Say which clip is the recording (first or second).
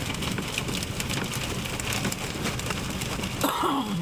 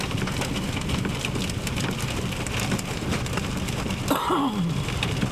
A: second